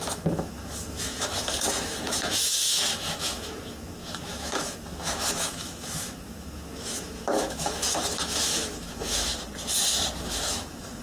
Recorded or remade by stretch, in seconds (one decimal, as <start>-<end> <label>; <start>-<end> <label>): 0.0-9.3 remade; 9.3-10.2 recorded; 10.2-11.0 remade